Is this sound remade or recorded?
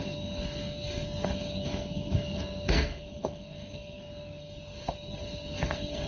remade